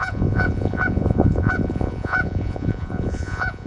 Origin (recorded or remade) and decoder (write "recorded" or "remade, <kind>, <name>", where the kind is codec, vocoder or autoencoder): remade, vocoder, Vocos